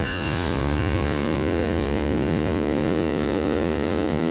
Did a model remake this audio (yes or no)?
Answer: yes